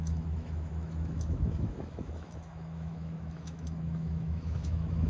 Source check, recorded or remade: remade